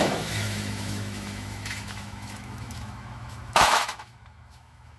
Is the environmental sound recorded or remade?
remade